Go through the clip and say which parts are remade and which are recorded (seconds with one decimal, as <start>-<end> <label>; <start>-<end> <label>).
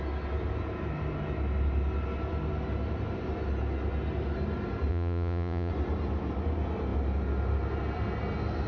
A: 0.0-4.9 recorded; 4.9-5.7 remade; 5.7-8.7 recorded